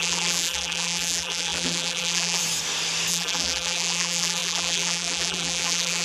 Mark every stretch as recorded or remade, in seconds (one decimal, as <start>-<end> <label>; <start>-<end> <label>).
0.0-2.4 remade; 2.4-3.1 recorded; 3.1-6.0 remade